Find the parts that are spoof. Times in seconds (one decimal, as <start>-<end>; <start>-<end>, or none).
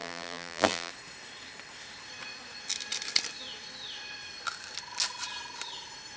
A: 0.0-0.9